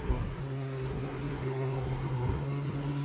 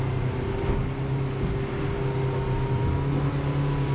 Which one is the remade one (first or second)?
first